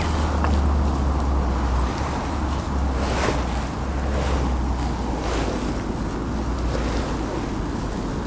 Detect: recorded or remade recorded